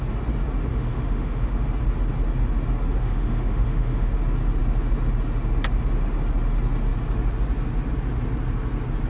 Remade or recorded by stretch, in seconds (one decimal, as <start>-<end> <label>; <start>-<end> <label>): 0.0-0.7 recorded; 0.7-1.5 remade; 1.5-3.0 recorded; 3.0-4.1 remade; 4.1-9.1 recorded